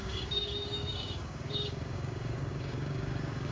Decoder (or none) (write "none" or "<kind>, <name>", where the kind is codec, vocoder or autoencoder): codec, DAC